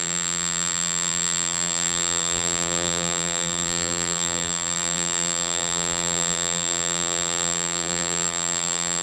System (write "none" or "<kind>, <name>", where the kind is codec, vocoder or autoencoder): vocoder, BigVGAN v2